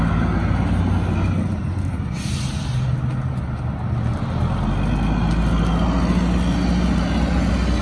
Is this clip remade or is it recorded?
recorded